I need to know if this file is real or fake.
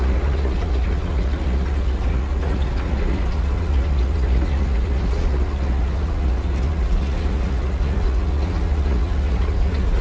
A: fake